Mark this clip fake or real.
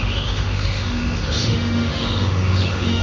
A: fake